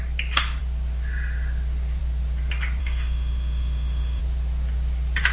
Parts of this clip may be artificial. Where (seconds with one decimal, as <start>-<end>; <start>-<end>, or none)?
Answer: 2.8-4.2